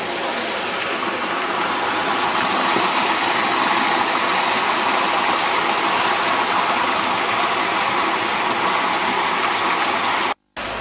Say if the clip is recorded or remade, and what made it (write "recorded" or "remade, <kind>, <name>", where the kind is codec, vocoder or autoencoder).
recorded